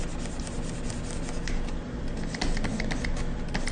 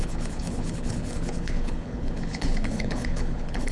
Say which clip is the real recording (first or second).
first